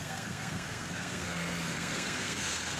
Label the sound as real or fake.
fake